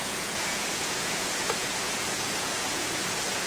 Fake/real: fake